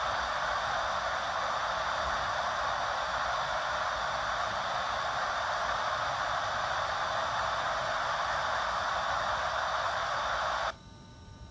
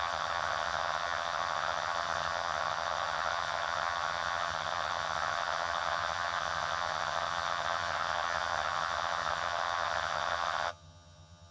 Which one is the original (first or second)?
first